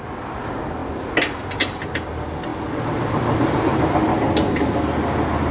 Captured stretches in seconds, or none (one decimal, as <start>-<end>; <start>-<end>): 0.0-5.5